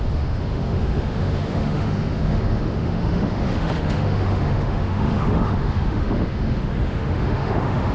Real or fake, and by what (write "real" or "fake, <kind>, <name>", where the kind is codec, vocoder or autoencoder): fake, autoencoder, DAC-VAE